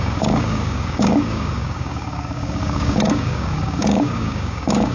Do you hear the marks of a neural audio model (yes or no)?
yes